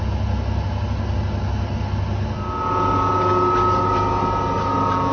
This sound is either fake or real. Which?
real